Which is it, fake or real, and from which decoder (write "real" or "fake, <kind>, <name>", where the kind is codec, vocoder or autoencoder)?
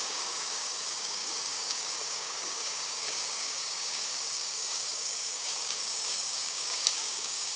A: fake, codec, DAC